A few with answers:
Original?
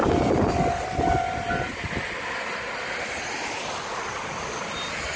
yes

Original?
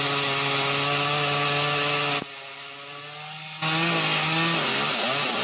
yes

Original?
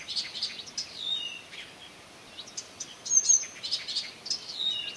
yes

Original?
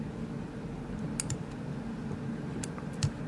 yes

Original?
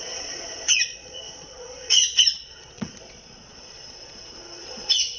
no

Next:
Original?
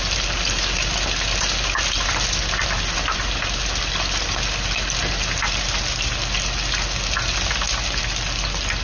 yes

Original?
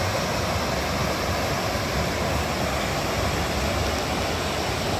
yes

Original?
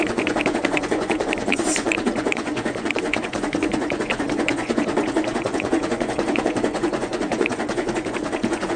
no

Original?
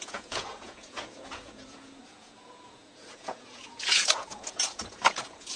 no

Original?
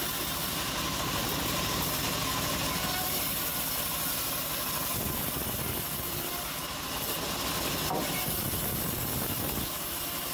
yes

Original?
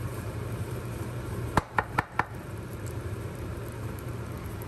no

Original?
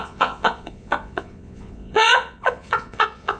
no